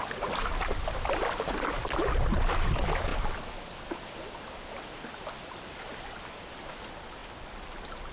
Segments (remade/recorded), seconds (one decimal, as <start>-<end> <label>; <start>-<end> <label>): 0.0-8.1 recorded